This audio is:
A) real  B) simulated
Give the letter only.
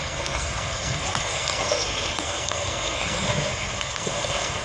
B